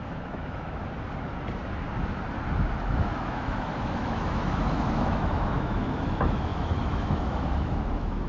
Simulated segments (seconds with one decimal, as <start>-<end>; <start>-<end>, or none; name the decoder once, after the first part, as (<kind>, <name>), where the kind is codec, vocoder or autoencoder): 0.0-0.8 (autoencoder, DAC-VAE); 2.7-8.3